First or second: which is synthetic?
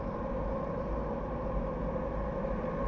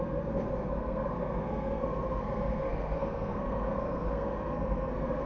second